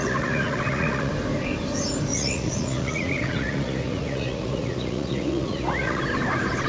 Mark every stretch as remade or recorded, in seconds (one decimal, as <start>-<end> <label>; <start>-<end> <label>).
0.0-1.1 remade; 1.1-2.1 recorded; 2.1-6.0 remade; 6.0-6.7 recorded